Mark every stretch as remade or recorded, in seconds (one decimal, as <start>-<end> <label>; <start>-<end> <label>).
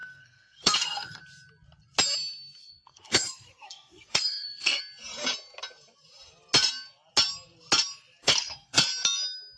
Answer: 0.0-1.2 remade; 1.2-2.6 recorded; 2.6-4.8 remade; 4.8-8.2 recorded; 8.2-8.8 remade; 8.8-9.6 recorded